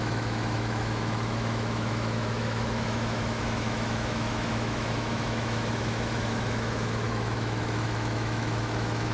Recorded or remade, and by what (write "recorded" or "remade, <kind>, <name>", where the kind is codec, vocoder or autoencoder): remade, autoencoder, DAC-VAE